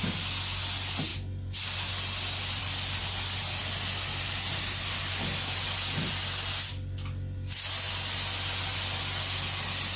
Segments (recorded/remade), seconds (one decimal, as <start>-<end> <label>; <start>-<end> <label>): 0.0-10.0 recorded